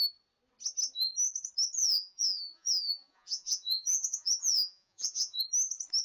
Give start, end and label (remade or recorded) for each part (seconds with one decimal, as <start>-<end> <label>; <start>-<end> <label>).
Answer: 0.0-1.8 recorded; 1.8-5.4 remade; 5.4-6.0 recorded

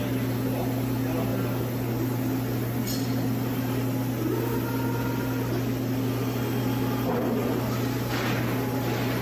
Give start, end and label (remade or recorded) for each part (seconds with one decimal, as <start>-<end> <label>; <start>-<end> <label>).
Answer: 0.0-9.2 recorded

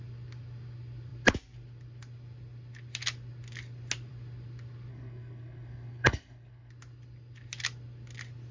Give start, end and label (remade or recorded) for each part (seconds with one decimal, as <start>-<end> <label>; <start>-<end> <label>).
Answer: 0.0-4.9 recorded; 4.9-6.7 remade; 6.7-8.5 recorded

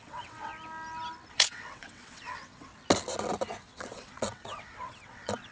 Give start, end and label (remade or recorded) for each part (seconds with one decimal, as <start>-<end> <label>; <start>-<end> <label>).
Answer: 0.0-0.5 remade; 0.5-1.3 recorded; 1.3-2.7 remade; 2.7-3.6 recorded; 3.6-5.5 remade

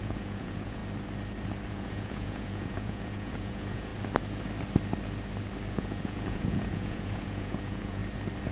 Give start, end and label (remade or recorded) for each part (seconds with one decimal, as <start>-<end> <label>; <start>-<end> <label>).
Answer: 0.0-0.8 remade; 0.8-1.7 recorded; 1.7-3.9 remade; 3.9-5.7 recorded; 5.7-8.0 remade; 8.0-8.5 recorded

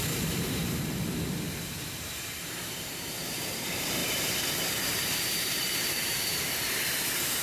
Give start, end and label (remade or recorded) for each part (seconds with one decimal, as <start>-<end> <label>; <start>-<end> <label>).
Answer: 0.0-7.4 remade

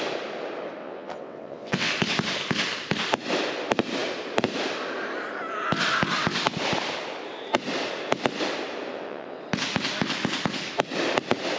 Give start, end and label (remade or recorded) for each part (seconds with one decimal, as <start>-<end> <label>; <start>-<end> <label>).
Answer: 0.0-0.8 recorded; 0.8-1.9 remade; 1.9-8.9 recorded; 8.9-9.4 remade; 9.4-11.6 recorded

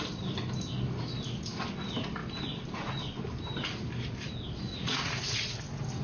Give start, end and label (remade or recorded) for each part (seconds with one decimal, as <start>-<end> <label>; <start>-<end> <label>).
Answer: 0.0-4.7 recorded; 4.7-5.6 remade; 5.6-6.0 recorded